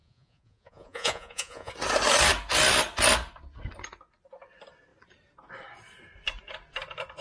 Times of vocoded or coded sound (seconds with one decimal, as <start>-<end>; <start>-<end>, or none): 0.0-1.7